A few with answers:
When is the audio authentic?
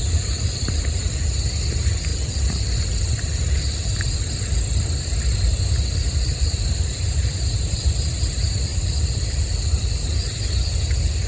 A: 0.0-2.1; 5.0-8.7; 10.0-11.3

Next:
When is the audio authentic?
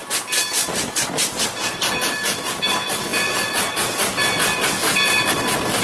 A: 0.0-5.8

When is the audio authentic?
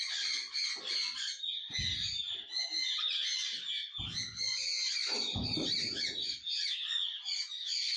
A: 0.0-8.0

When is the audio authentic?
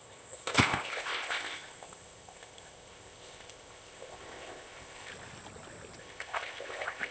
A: 5.1-6.0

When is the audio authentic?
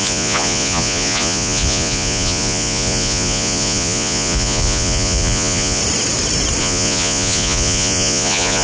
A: 5.8-6.6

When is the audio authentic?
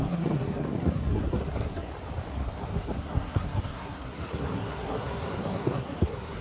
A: 1.9-2.3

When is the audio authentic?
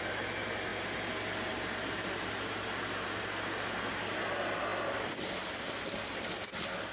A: 0.0-6.9